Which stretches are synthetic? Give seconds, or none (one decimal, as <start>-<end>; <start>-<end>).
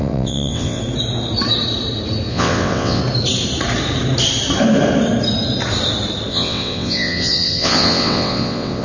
0.0-0.8; 2.3-3.0; 6.3-8.8